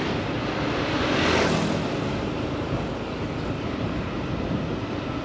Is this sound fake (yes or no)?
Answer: no